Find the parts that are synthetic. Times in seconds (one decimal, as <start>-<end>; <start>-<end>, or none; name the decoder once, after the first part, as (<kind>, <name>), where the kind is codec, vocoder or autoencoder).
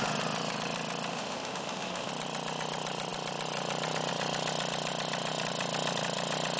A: 1.1-2.1 (autoencoder, DAC-VAE)